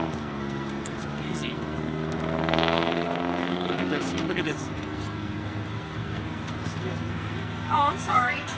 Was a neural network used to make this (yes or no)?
yes